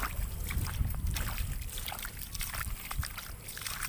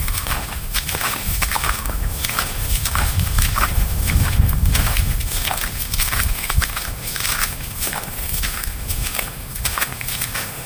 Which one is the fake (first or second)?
second